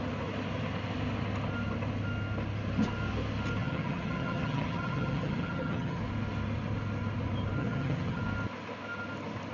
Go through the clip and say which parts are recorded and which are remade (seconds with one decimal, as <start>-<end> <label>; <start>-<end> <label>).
0.0-3.6 recorded; 3.6-6.0 remade; 6.0-7.6 recorded; 7.6-8.2 remade; 8.2-9.5 recorded